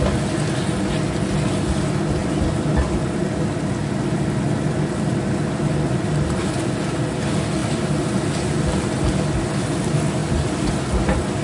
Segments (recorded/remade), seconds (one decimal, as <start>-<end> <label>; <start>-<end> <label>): 0.0-11.4 recorded